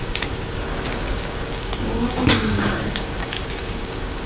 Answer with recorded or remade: remade